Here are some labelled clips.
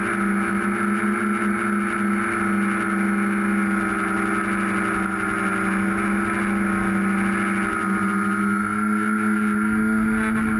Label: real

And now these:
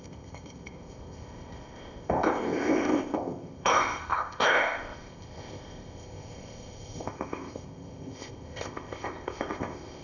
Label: fake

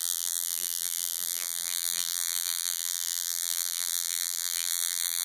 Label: fake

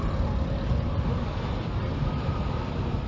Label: real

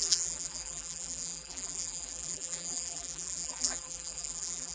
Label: fake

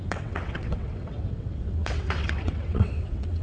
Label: fake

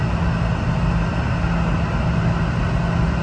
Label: real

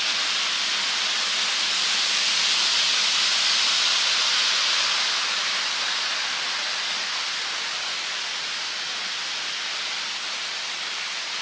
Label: real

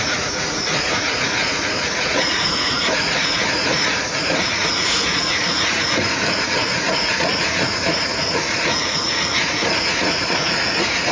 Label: fake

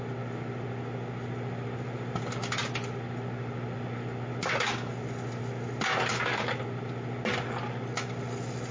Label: real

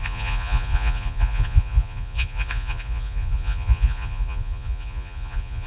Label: fake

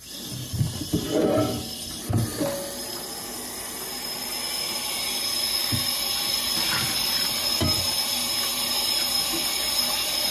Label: real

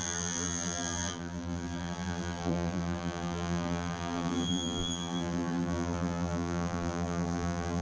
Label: fake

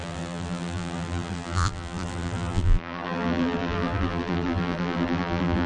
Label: fake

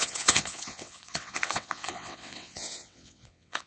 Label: fake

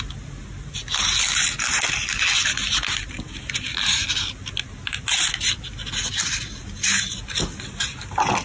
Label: real